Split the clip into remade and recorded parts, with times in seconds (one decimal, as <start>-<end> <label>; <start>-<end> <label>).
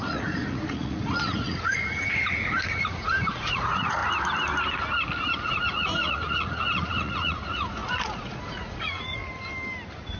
0.0-4.0 remade; 4.0-5.3 recorded; 5.3-9.2 remade; 9.2-10.2 recorded